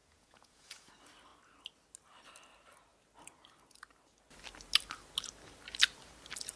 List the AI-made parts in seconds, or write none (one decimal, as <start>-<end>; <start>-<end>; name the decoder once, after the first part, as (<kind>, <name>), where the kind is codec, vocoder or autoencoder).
0.0-0.9 (vocoder, Vocos)